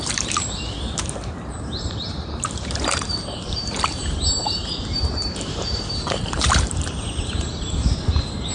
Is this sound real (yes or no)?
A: no